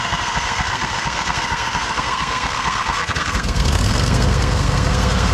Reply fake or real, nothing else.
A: fake